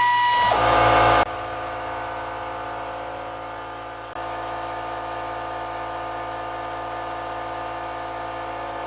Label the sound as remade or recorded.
recorded